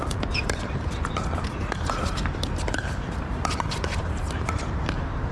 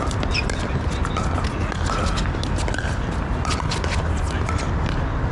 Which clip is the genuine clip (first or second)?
second